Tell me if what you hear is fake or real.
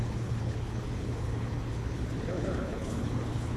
fake